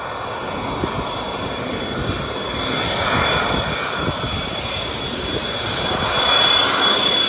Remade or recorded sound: recorded